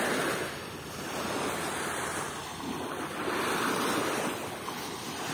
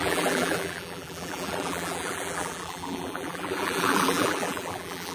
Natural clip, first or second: first